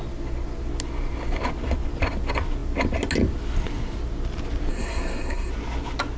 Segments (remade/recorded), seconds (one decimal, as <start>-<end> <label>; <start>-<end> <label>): 0.0-4.7 recorded; 4.7-5.5 remade; 5.5-6.2 recorded